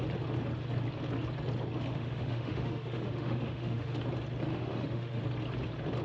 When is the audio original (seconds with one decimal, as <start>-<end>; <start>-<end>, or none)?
0.0-1.9; 4.0-4.5; 5.2-6.0